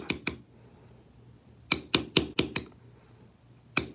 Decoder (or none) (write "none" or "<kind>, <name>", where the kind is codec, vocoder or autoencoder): none